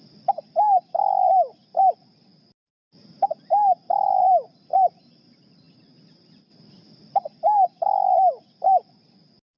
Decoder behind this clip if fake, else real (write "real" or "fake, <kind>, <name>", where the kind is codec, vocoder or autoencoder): real